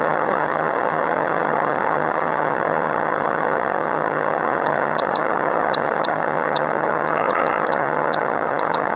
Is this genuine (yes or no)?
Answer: no